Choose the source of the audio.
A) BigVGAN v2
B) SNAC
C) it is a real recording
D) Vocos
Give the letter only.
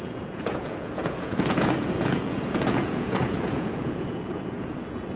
D